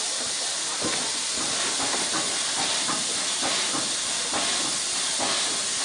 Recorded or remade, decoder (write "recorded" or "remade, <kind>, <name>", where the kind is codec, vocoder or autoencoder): recorded